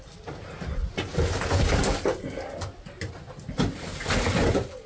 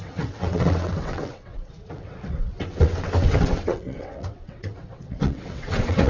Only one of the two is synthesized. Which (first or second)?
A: second